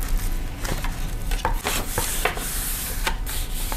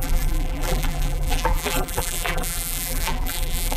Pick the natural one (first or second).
first